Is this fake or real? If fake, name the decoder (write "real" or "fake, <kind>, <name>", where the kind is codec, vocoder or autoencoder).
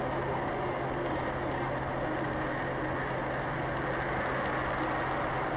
real